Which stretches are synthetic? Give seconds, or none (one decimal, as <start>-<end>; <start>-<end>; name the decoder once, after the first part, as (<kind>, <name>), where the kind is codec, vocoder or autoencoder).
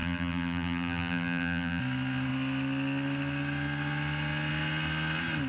0.0-1.8 (vocoder, BigVGAN v2)